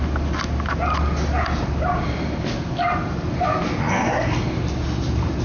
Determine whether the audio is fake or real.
real